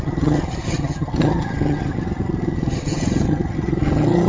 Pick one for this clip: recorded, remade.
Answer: remade